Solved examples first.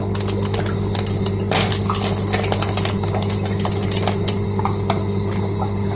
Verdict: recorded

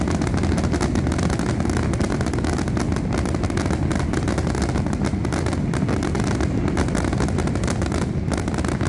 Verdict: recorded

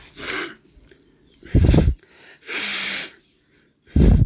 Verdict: recorded